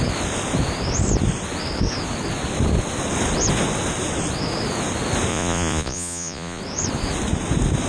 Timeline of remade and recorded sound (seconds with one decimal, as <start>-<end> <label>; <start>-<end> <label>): 0.0-5.3 recorded; 5.3-6.6 remade; 6.6-7.9 recorded